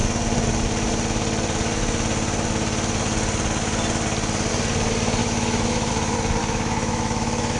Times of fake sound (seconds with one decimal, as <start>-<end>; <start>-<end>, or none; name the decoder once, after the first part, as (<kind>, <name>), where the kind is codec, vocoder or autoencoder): 5.2-5.9 (autoencoder, DAC-VAE); 6.4-7.6